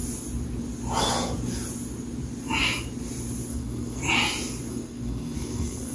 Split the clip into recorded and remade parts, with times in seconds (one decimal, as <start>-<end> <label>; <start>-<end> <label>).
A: 0.0-3.5 recorded; 3.5-4.0 remade; 4.0-4.7 recorded; 4.7-5.9 remade